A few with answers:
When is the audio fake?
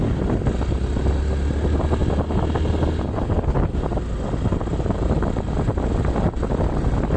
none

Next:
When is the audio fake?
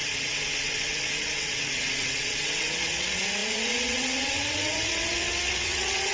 0.0-6.1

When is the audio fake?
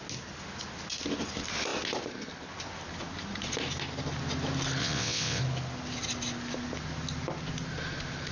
4.8-5.4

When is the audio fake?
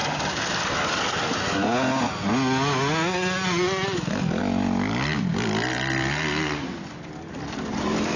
none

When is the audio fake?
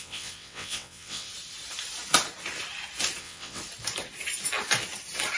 0.0-1.3; 3.2-3.6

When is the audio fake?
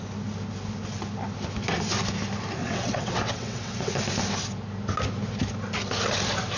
2.6-3.9